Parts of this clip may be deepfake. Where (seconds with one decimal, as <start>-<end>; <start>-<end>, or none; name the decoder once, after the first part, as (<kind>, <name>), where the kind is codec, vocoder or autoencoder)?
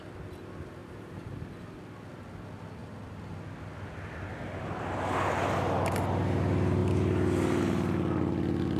0.8-1.8 (vocoder, BigVGAN v2)